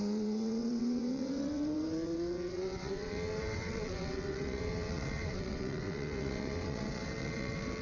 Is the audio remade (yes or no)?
yes